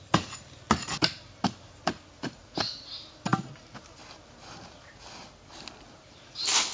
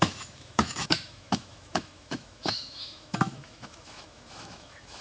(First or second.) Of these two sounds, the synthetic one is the second